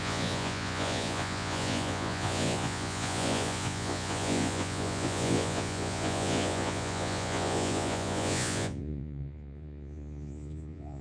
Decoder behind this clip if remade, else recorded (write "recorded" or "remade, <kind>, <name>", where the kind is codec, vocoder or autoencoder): remade, vocoder, Vocos